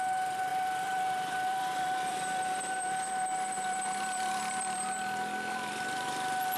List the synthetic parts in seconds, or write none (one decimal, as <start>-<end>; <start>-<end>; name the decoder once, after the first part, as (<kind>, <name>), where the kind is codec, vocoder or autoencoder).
0.0-6.6 (vocoder, BigVGAN v2)